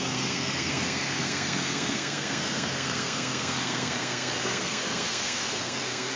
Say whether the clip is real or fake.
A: fake